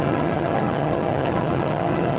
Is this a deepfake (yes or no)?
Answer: yes